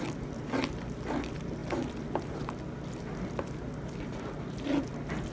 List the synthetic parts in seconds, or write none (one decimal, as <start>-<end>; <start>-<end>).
none